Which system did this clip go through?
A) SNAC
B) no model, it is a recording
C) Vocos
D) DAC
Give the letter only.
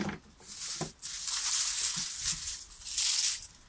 B